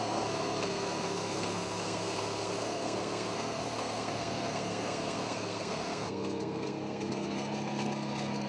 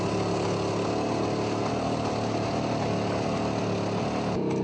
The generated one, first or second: first